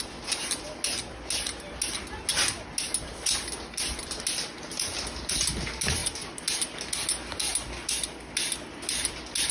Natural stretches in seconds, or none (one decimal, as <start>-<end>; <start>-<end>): 0.0-9.5